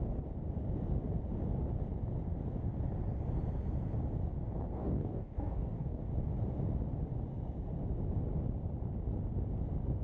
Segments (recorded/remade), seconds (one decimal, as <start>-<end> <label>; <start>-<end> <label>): 0.0-4.8 recorded; 4.8-6.0 remade; 6.0-10.0 recorded